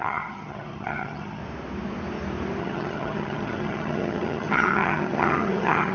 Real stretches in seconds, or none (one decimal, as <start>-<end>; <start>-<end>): 1.4-2.6